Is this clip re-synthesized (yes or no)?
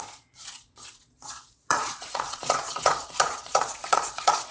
yes